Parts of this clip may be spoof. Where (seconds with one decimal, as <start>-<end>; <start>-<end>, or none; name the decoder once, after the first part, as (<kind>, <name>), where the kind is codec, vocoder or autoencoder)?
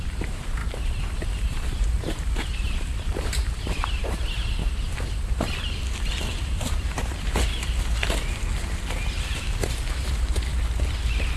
0.0-4.6 (vocoder, BigVGAN v2); 6.2-7.5; 9.9-10.5